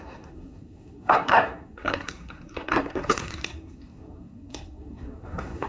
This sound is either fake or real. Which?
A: fake